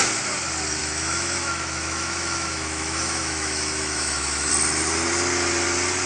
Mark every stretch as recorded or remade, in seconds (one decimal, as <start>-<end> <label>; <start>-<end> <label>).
0.0-0.8 recorded; 0.8-4.5 remade; 4.5-6.1 recorded